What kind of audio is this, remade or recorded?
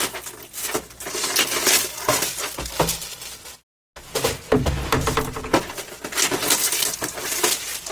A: recorded